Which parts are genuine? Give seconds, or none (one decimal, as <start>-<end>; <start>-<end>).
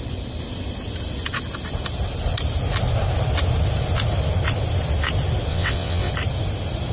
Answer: 0.0-5.5; 6.1-6.9